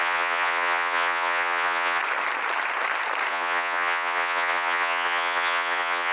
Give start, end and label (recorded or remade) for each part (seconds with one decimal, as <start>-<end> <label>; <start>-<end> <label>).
0.0-2.0 remade; 2.0-3.3 recorded; 3.3-6.1 remade